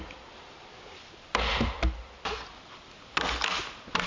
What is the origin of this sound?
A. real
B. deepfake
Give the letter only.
A